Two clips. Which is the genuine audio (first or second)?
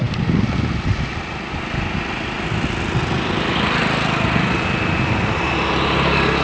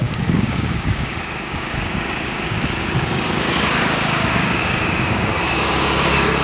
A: first